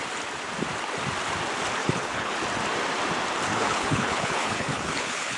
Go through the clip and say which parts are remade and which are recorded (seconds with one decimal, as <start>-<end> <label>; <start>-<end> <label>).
0.0-1.8 recorded; 1.8-2.3 remade; 2.3-3.5 recorded; 3.5-5.4 remade